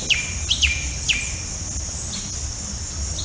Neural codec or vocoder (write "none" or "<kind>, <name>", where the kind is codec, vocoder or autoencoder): none